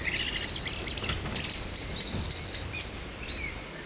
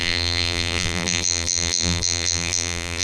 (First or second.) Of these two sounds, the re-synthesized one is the second